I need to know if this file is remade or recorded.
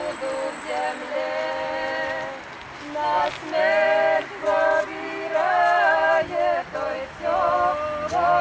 recorded